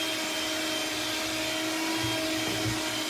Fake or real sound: real